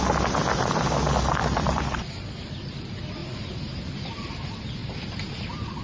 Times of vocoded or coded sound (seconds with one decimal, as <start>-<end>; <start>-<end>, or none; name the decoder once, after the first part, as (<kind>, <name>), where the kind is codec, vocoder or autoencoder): 1.4-2.8 (vocoder, BigVGAN v2); 4.8-5.8